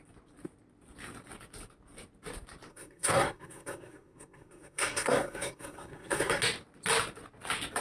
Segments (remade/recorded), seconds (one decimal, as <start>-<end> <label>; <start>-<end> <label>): 0.0-2.7 recorded; 2.7-6.4 remade; 6.4-7.8 recorded